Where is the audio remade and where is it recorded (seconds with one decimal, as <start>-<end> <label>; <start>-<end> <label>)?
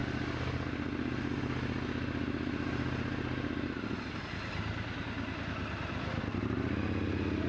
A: 0.0-7.5 recorded